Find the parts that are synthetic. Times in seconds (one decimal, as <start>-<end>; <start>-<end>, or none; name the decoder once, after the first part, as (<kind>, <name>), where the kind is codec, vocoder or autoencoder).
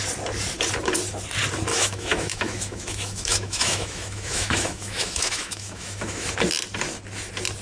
1.7-6.3 (autoencoder, DAC-VAE)